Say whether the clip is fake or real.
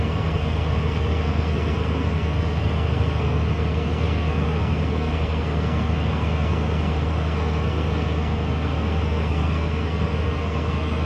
fake